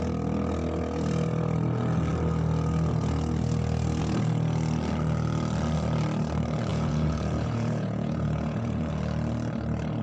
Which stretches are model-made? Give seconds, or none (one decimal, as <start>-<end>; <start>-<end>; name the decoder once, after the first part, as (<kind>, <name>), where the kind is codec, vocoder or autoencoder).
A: 6.7-8.9 (vocoder, Vocos)